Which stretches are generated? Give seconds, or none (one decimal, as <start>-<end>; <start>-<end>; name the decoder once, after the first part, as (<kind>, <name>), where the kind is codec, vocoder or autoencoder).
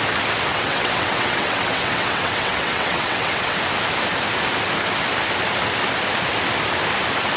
0.5-3.6 (vocoder, WaveNeXt)